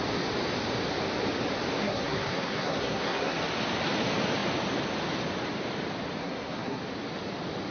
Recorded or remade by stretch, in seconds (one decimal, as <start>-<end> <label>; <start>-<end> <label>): 0.0-1.8 recorded; 1.8-3.4 remade; 3.4-6.2 recorded; 6.2-6.8 remade; 6.8-7.7 recorded